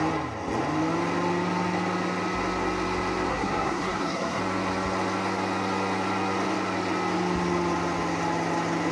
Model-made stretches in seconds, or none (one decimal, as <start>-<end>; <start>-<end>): 3.3-4.4